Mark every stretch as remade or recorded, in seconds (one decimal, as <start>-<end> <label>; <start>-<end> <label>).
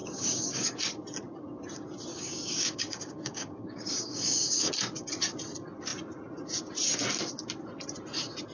0.0-0.8 remade; 0.8-2.1 recorded; 2.1-4.7 remade; 4.7-8.5 recorded